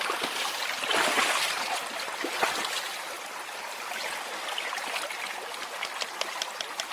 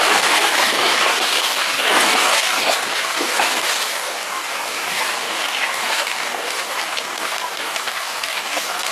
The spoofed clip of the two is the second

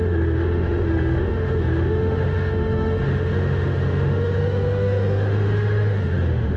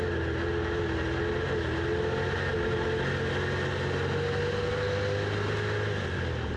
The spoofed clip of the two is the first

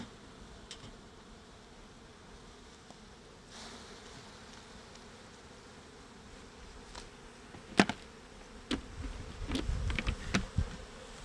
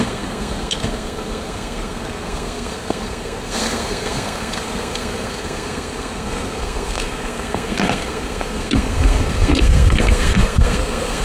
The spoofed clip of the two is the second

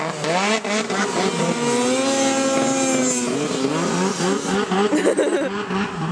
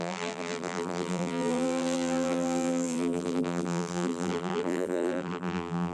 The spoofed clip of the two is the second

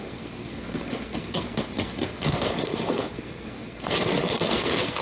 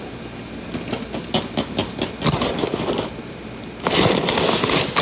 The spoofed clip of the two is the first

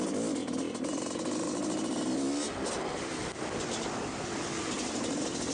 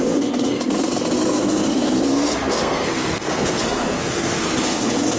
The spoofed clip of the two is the second